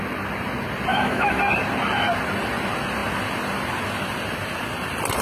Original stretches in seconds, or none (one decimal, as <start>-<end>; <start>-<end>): 0.0-0.9; 1.4-5.2